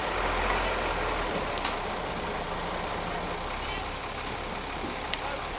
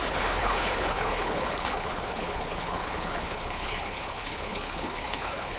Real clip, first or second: first